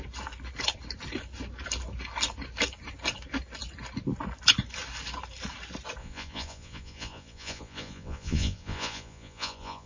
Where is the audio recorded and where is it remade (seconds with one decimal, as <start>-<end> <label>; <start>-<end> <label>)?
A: 0.0-6.0 recorded; 6.0-9.9 remade